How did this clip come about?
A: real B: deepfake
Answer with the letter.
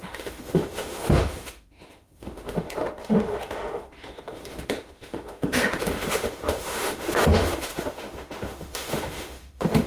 B